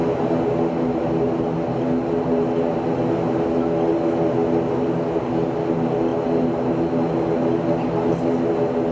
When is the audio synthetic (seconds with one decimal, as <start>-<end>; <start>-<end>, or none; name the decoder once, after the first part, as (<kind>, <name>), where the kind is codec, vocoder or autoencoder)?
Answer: none